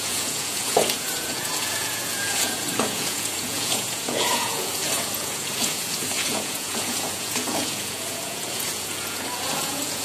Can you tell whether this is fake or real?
fake